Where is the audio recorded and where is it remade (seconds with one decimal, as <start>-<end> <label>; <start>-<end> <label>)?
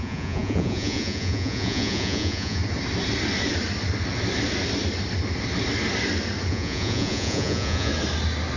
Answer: 0.0-2.6 remade; 2.6-6.5 recorded; 6.5-7.9 remade; 7.9-8.6 recorded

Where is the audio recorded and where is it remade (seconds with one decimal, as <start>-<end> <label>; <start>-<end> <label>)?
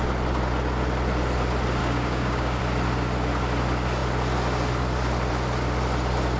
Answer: 0.0-1.8 recorded; 1.8-2.6 remade; 2.6-6.4 recorded